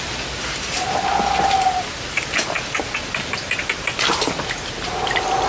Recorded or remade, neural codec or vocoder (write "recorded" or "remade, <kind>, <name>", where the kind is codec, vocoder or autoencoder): recorded